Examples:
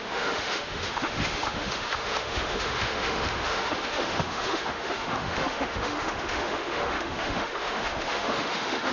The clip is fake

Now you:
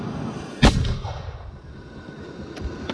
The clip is real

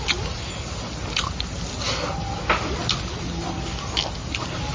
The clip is real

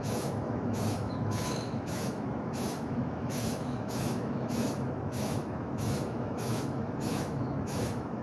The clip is fake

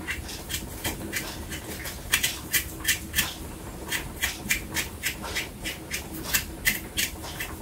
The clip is real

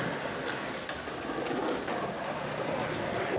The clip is real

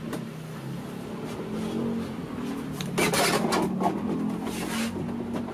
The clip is real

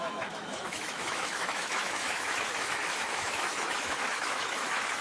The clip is fake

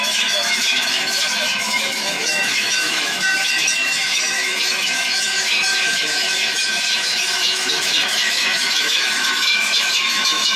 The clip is fake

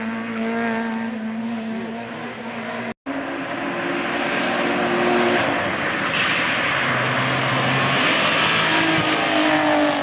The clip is real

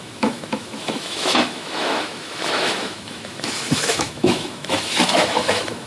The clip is fake